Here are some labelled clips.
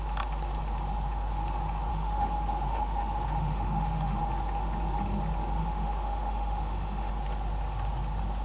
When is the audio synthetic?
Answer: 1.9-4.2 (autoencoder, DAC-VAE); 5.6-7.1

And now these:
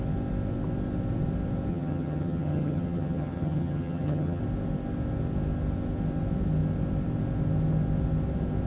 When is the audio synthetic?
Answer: 1.7-4.4 (vocoder, HiFi-GAN)

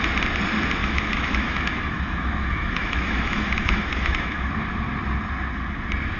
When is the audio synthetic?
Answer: 0.8-4.5 (autoencoder, DAC-VAE)

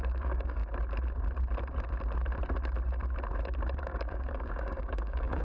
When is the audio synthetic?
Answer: 0.0-0.6 (codec, DAC); 3.8-5.4